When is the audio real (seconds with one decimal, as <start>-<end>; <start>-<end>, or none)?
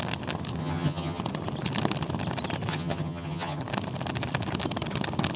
0.0-0.6; 1.2-2.7; 3.6-5.4